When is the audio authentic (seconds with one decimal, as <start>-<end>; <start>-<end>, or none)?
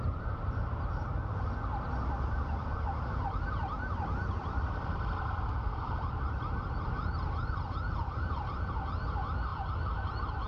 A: 0.0-4.4; 8.3-10.5